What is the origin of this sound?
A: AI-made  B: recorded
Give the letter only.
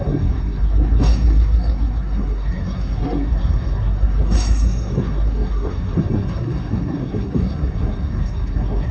A